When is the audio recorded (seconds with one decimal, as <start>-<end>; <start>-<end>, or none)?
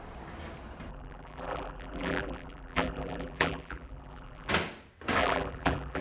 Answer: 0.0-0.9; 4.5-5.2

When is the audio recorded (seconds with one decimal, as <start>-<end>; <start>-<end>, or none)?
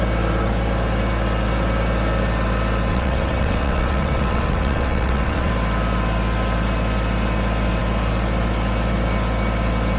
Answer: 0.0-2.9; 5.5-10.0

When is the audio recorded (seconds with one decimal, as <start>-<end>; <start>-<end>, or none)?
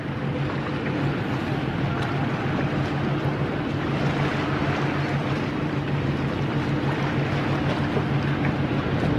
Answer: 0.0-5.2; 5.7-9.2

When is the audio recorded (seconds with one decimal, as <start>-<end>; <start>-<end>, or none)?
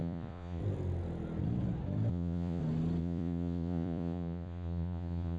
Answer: 0.6-2.1; 2.6-3.0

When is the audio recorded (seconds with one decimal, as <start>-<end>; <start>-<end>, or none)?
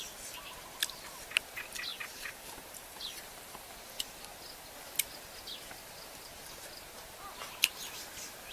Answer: 0.0-1.9; 3.7-8.5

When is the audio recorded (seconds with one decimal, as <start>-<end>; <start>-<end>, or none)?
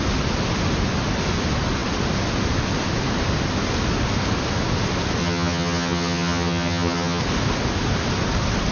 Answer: 0.0-5.2; 7.2-8.7